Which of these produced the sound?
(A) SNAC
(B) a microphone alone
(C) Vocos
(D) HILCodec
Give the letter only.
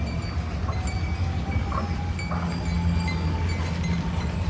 B